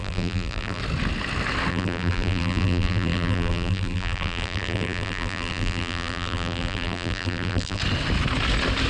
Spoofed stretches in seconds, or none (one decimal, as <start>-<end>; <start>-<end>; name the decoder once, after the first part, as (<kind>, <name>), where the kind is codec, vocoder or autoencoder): 0.0-0.8 (vocoder, BigVGAN v2); 1.7-7.8